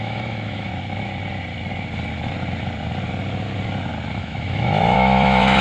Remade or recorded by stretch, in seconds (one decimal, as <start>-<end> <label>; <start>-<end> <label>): 0.0-0.7 remade; 0.7-4.1 recorded; 4.1-5.6 remade